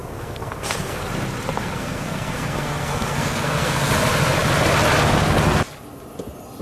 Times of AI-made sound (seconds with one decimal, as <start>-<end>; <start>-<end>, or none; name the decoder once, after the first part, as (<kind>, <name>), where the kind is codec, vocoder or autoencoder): 0.0-1.0 (codec, SNAC); 1.6-3.9